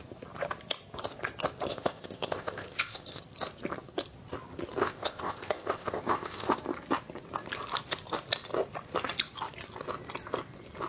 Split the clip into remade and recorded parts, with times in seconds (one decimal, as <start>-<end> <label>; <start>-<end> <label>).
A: 0.0-1.7 recorded; 1.7-3.2 remade; 3.2-4.8 recorded; 4.8-6.6 remade; 6.6-10.9 recorded